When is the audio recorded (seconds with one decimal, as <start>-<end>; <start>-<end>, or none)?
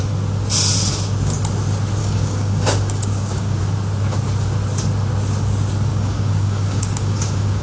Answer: 0.0-2.0; 3.6-5.9